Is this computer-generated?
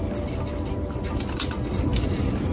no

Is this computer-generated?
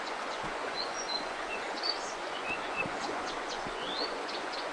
yes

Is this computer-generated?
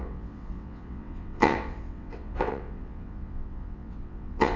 yes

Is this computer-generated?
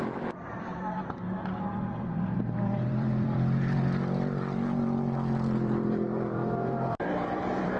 yes